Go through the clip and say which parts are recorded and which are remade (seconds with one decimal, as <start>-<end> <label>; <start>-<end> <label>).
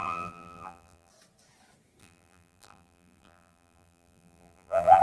0.0-1.1 remade; 1.1-2.0 recorded; 2.0-5.0 remade